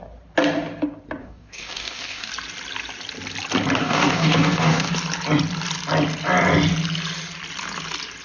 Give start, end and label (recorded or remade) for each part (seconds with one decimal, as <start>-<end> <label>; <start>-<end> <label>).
0.0-1.2 recorded; 1.2-2.3 remade; 2.3-3.8 recorded; 3.8-4.9 remade; 4.9-8.2 recorded